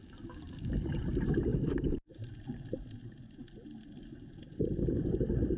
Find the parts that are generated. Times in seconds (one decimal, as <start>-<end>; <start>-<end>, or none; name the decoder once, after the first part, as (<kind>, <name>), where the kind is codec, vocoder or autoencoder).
1.5-2.6 (vocoder, BigVGAN v2)